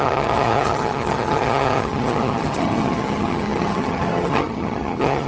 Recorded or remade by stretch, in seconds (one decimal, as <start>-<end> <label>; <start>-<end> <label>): 0.0-5.3 remade